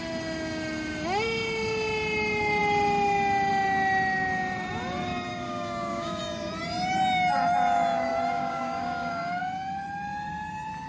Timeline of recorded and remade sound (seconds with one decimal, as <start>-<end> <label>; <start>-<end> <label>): 0.0-5.3 recorded; 5.3-6.2 remade; 6.2-8.1 recorded; 8.1-9.4 remade; 9.4-10.9 recorded